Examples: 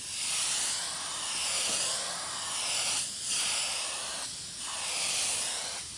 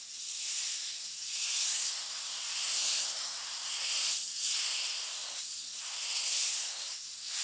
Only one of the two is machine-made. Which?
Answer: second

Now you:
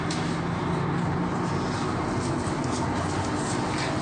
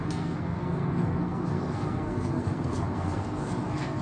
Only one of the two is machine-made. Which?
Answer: second